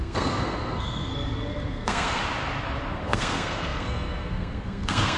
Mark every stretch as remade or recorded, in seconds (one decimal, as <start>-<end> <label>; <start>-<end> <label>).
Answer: 0.0-1.1 remade; 1.1-1.7 recorded; 1.7-2.2 remade; 2.2-2.9 recorded; 2.9-5.2 remade